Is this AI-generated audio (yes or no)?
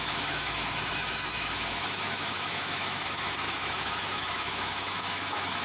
yes